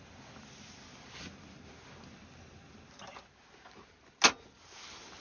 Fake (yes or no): no